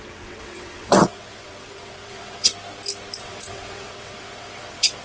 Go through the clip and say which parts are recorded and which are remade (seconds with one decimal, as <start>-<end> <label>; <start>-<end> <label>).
0.0-2.5 remade; 2.5-3.2 recorded; 3.2-5.0 remade